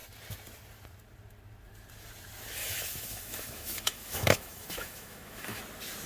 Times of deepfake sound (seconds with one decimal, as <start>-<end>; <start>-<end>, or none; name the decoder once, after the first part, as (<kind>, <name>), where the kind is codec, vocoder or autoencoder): 2.6-5.6 (autoencoder, DAC-VAE)